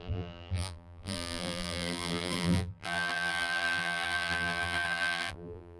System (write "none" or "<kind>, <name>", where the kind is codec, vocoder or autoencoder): vocoder, BigVGAN v2